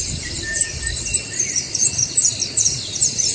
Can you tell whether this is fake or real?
real